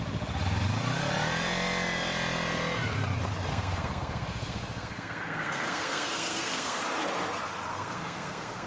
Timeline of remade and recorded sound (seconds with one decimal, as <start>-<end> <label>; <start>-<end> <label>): 0.0-3.5 recorded; 3.5-6.8 remade; 6.8-7.7 recorded; 7.7-8.7 remade

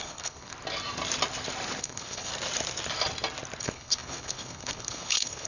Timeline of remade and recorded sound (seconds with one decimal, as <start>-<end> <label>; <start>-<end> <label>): 0.0-0.5 remade; 0.5-1.8 recorded; 1.8-2.3 remade; 2.3-3.6 recorded; 3.6-5.5 remade

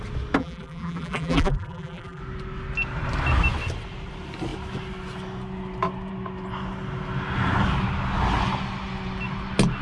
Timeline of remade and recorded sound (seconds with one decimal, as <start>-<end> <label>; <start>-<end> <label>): 0.0-0.4 recorded; 0.4-2.2 remade; 2.2-9.8 recorded

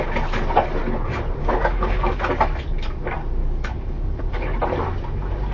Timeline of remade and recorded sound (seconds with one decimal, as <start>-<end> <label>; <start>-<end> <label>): 0.0-1.4 recorded; 1.4-2.1 remade; 2.1-3.4 recorded; 3.4-4.2 remade; 4.2-5.5 recorded

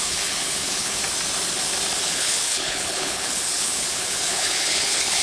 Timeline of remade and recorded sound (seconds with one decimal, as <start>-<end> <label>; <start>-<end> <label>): 0.0-1.0 remade; 1.0-2.0 recorded; 2.0-5.2 remade

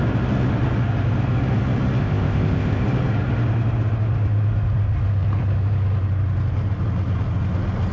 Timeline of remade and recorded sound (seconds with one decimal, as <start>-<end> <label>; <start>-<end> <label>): 0.0-2.0 recorded; 2.0-2.8 remade; 2.8-7.9 recorded